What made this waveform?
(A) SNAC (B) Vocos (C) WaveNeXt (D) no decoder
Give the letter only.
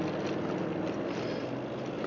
D